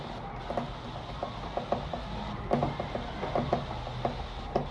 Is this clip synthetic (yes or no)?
no